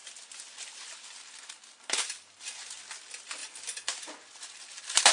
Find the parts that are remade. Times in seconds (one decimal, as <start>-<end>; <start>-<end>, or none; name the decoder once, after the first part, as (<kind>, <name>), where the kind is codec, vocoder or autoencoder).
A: none